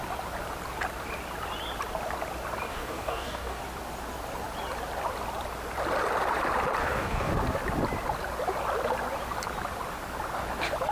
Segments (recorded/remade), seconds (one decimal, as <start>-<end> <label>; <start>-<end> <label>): 0.0-2.7 recorded; 2.7-3.6 remade; 3.6-6.8 recorded; 6.8-7.3 remade; 7.3-10.9 recorded